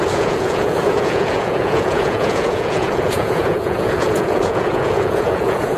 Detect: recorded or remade remade